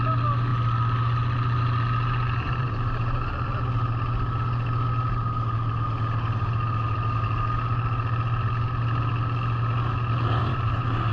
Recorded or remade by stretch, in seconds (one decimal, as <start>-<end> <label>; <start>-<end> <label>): 0.0-2.6 recorded; 2.6-3.3 remade; 3.3-10.4 recorded; 10.4-11.1 remade